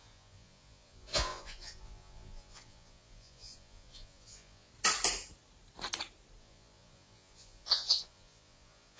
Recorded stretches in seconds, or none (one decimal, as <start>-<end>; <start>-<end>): 4.7-6.4